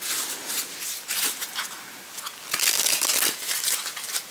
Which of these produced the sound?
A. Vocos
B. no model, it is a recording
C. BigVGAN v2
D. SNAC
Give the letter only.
B